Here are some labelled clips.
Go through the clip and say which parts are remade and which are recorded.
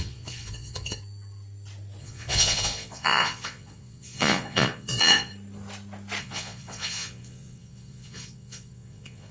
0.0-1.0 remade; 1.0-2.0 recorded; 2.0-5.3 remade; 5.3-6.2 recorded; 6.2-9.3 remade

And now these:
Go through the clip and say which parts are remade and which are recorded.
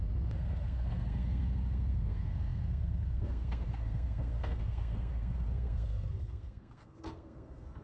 0.0-7.8 remade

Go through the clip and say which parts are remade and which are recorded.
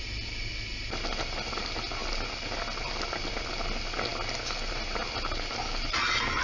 0.0-6.4 recorded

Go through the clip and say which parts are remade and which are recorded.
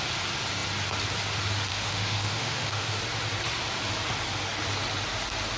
0.0-1.7 recorded; 1.7-3.0 remade; 3.0-5.6 recorded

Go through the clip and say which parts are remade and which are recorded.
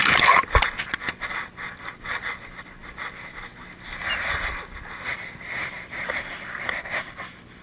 0.0-7.6 recorded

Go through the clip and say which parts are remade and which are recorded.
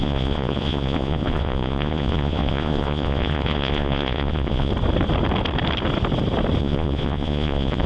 0.0-4.7 remade; 4.7-6.6 recorded; 6.6-7.9 remade